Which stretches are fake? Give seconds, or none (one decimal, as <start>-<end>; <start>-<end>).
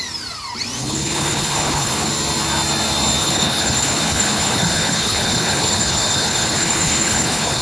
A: 0.8-2.1; 3.2-7.6